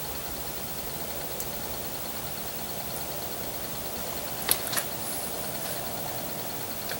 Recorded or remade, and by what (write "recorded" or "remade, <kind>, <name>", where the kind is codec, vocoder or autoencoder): recorded